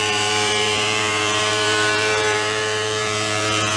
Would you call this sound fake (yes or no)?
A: yes